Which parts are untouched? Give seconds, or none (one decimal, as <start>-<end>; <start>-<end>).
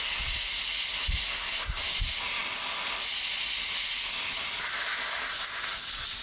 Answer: 0.0-6.2